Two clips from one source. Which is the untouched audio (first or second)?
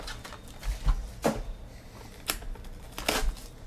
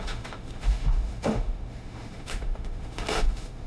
first